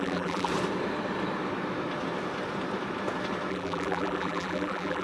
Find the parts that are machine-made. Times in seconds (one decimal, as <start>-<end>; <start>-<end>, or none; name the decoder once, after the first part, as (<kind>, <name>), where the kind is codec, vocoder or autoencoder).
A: 0.0-0.5 (vocoder, BigVGAN v2); 3.5-5.0